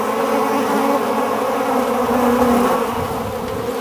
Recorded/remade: recorded